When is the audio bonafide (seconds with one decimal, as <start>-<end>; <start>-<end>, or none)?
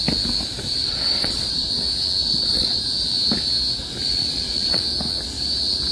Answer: 0.0-0.8; 1.7-2.2; 2.8-4.2; 4.8-5.9